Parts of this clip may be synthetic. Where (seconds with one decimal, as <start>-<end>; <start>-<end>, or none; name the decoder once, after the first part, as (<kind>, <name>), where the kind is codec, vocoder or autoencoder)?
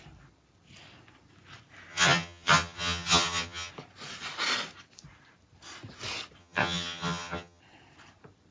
1.9-3.7 (vocoder, HiFi-GAN); 6.4-7.6